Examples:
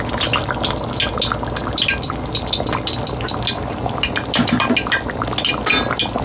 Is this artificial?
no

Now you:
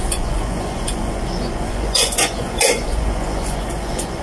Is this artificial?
yes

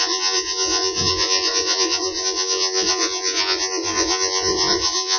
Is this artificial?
yes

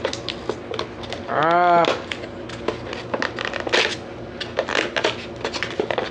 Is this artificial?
no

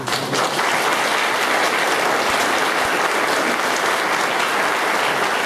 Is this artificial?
no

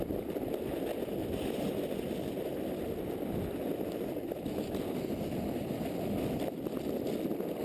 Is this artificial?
no